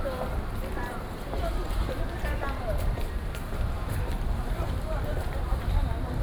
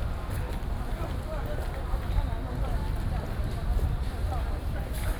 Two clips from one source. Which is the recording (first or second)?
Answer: second